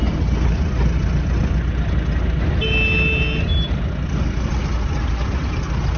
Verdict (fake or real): real